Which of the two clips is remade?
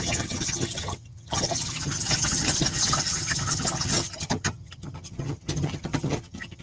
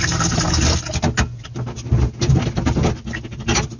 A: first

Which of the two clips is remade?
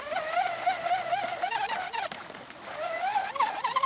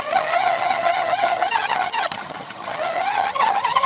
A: second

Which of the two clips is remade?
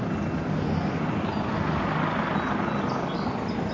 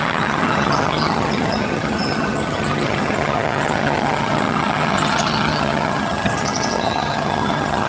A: second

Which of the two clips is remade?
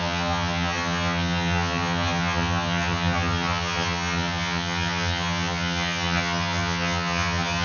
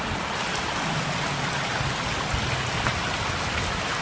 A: first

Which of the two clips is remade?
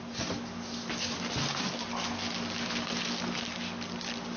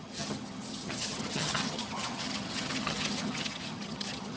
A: second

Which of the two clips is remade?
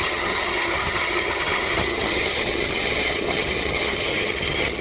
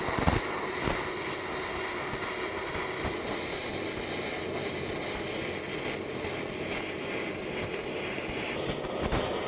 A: first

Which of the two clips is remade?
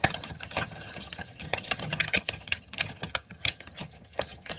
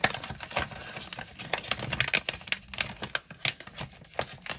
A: first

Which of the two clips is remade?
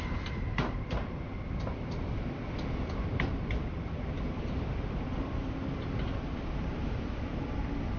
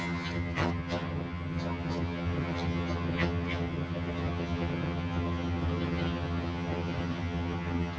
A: second